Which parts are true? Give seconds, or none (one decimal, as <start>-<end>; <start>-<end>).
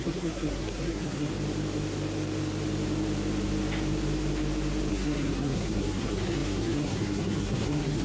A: 1.3-4.9